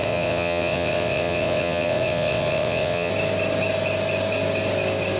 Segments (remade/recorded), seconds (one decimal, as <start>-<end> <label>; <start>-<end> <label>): 0.0-3.1 remade; 3.1-5.2 recorded